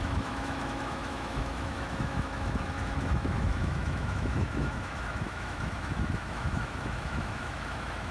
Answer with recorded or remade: remade